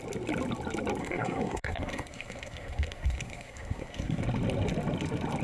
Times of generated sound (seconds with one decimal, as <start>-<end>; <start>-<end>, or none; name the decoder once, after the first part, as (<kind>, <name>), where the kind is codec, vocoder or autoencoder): 1.0-4.2 (codec, SNAC)

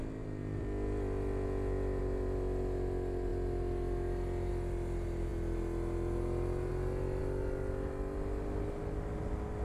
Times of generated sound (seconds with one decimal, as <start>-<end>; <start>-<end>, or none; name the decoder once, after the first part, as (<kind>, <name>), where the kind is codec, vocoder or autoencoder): none

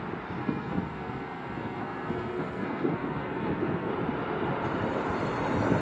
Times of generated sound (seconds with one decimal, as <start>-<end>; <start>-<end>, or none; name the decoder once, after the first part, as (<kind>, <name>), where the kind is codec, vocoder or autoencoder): 0.4-3.9 (codec, SNAC)

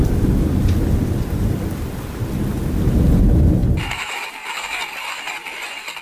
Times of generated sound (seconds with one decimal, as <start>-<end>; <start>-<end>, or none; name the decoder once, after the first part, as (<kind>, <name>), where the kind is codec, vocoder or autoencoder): none

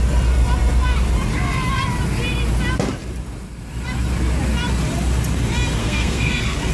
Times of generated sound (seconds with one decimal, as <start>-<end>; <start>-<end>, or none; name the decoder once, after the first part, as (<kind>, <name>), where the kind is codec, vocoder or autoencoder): 5.8-6.7 (codec, SNAC)

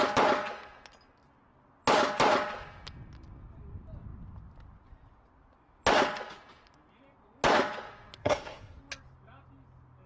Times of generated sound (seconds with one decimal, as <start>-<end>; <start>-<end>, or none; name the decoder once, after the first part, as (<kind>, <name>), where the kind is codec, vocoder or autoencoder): 8.2-8.8 (codec, SNAC)